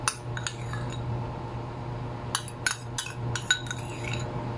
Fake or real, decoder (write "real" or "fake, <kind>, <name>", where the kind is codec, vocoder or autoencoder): real